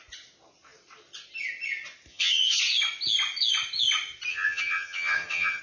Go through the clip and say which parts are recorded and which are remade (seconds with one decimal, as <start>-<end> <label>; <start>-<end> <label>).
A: 0.0-2.1 recorded; 2.1-2.6 remade; 2.6-4.3 recorded; 4.3-5.6 remade